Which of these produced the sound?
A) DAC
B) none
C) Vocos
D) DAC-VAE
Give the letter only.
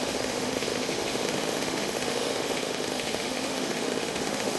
D